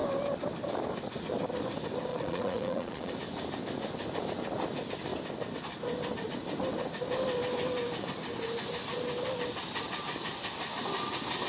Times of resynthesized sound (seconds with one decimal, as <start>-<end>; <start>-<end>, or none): 2.1-3.1